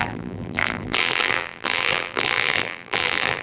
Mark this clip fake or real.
fake